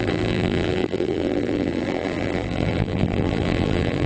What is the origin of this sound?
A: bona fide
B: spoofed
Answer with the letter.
B